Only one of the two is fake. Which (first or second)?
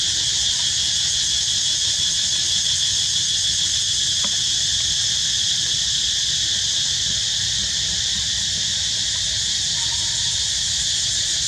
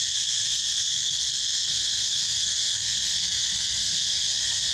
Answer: second